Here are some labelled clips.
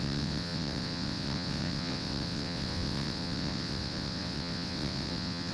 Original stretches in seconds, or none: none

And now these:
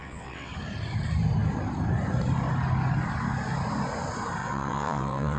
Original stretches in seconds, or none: 0.5-4.4